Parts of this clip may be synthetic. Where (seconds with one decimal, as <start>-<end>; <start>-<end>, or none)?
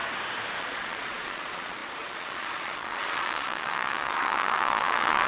0.6-5.3